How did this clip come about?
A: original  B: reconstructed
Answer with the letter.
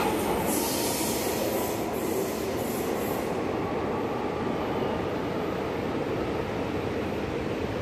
A